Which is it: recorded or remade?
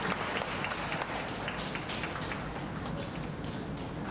recorded